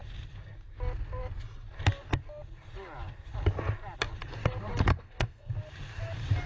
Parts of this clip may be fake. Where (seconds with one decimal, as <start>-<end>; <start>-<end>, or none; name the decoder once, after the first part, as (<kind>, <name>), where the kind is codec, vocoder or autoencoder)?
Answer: 4.9-5.5 (codec, SNAC)